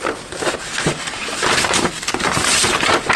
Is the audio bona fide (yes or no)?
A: no